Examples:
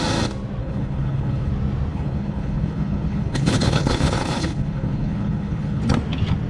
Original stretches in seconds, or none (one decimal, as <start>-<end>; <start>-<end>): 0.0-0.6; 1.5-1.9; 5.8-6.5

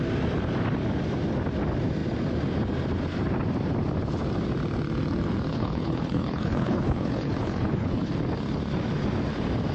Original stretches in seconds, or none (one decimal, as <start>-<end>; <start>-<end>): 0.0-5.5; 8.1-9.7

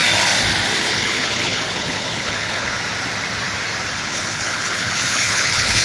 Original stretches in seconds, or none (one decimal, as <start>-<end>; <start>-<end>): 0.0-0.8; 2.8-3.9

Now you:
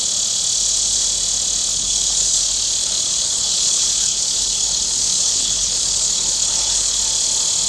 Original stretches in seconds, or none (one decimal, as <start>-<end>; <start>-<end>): 0.0-1.7; 2.4-2.8; 7.0-7.7